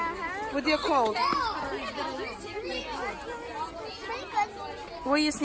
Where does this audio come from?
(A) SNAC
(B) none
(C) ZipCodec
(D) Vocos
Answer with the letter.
B